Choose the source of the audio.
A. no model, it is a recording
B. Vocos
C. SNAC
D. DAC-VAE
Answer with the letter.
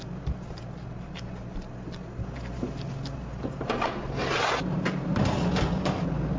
A